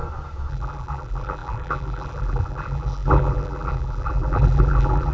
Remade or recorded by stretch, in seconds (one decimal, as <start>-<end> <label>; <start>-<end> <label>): 0.0-0.5 recorded; 0.5-5.1 remade